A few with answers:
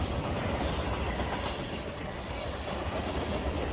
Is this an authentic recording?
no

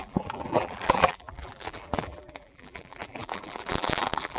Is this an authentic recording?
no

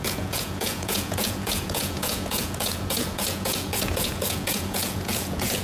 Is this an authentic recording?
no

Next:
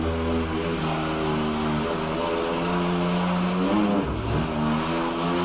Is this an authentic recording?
yes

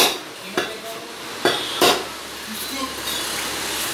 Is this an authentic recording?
yes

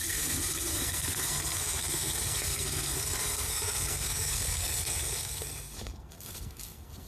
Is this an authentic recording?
no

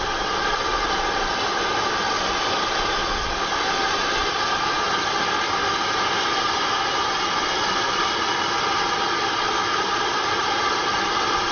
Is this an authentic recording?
yes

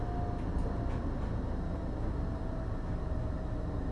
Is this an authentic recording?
yes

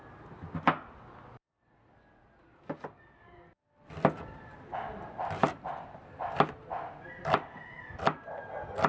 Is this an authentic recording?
yes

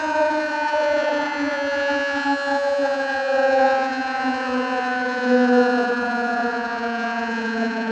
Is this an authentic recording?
no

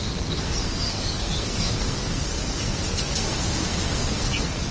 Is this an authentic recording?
no